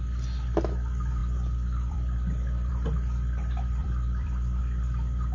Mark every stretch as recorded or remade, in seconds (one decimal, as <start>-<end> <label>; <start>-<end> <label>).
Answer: 0.0-1.2 recorded; 1.2-2.7 remade; 2.7-3.8 recorded; 3.8-4.6 remade; 4.6-5.3 recorded